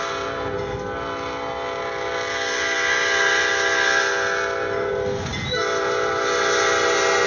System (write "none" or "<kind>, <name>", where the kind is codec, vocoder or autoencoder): none